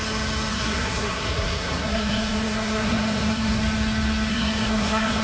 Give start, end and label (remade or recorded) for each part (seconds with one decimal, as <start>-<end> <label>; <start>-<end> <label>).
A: 0.0-0.5 recorded; 0.5-3.6 remade; 3.6-4.3 recorded; 4.3-5.2 remade

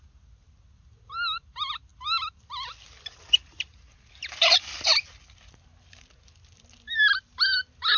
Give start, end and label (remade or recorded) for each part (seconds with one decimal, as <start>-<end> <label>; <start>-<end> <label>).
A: 0.0-8.0 recorded

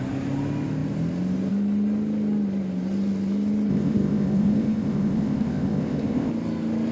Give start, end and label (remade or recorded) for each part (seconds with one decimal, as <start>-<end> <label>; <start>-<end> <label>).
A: 0.0-3.7 recorded; 3.7-6.3 remade; 6.3-6.9 recorded

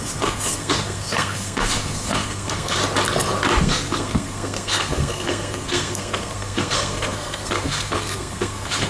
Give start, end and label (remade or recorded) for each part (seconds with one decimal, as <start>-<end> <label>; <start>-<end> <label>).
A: 0.0-2.8 remade; 2.8-3.6 recorded; 3.6-8.9 remade

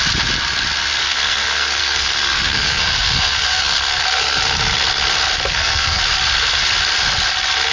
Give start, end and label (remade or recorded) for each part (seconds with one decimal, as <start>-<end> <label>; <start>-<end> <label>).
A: 0.0-1.0 recorded; 1.0-4.4 remade; 4.4-5.5 recorded; 5.5-6.0 remade; 6.0-7.7 recorded

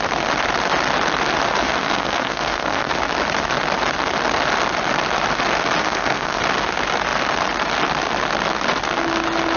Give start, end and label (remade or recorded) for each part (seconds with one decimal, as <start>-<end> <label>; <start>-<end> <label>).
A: 0.0-1.5 recorded; 1.5-2.9 remade; 2.9-5.8 recorded; 5.8-6.4 remade; 6.4-9.6 recorded